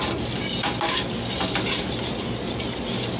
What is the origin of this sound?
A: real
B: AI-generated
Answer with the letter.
A